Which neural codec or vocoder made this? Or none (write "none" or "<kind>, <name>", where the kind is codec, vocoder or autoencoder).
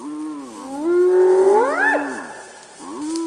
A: none